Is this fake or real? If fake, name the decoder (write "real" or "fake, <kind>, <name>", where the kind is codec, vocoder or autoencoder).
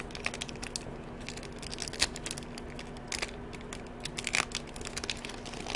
real